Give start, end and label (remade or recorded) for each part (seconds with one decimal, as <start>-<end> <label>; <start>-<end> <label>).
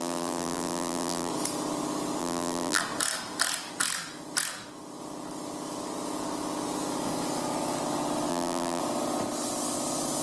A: 0.0-1.3 remade; 1.3-2.2 recorded; 2.2-2.8 remade; 2.8-8.3 recorded; 8.3-8.8 remade; 8.8-10.2 recorded